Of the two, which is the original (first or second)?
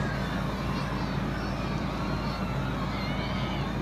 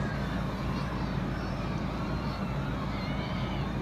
first